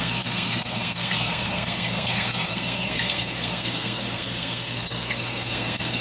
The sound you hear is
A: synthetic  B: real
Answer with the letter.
A